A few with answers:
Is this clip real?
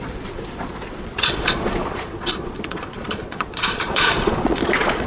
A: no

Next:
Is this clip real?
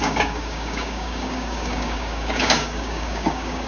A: no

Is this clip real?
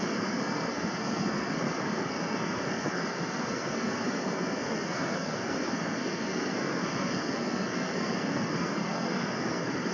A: no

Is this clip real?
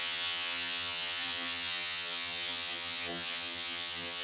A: no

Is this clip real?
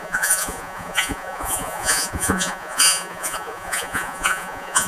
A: no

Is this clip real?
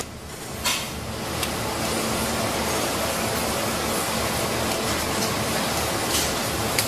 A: yes